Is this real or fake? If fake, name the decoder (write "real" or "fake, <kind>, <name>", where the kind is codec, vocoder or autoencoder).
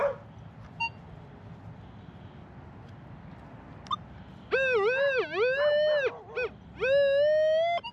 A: real